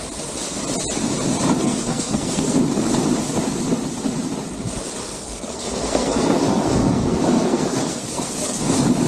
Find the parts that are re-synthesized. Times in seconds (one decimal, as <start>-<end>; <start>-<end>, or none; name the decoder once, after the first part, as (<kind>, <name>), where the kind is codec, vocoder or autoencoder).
1.6-2.6 (codec, SNAC); 5.0-8.6